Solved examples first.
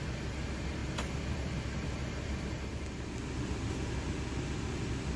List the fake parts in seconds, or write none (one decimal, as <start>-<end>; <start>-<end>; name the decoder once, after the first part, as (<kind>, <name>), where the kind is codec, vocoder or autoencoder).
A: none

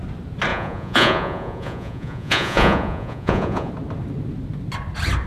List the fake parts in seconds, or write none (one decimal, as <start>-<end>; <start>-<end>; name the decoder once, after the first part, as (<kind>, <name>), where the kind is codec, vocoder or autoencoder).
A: 0.5-3.7 (vocoder, Vocos)

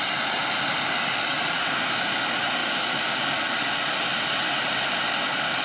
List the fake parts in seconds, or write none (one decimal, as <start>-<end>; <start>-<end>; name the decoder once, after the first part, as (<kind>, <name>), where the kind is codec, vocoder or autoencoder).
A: none